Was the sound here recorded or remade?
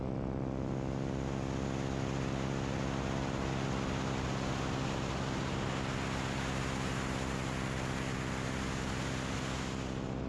recorded